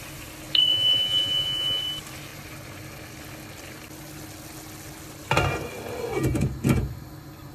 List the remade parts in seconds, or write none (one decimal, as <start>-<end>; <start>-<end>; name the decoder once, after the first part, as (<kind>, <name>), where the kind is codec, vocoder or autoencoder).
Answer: 0.7-1.8 (vocoder, Vocos)